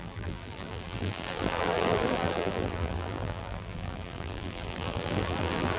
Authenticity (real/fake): fake